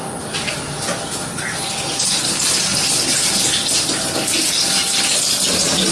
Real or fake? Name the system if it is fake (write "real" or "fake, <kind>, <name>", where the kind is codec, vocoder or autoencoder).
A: real